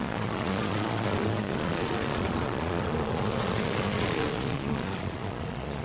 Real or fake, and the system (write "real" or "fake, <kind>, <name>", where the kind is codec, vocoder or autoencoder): fake, vocoder, Vocos